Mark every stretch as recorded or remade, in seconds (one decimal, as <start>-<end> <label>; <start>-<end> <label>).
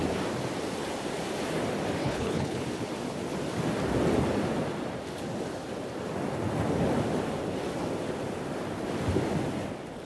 0.0-2.0 recorded; 2.0-2.6 remade; 2.6-10.1 recorded